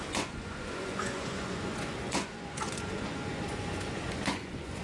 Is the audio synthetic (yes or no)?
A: yes